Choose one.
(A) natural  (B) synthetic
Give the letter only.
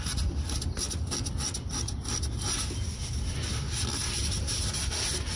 A